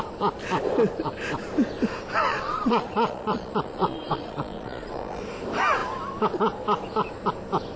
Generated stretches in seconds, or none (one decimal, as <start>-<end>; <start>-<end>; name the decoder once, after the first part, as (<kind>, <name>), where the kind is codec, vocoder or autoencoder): 2.3-5.2 (vocoder, Vocos)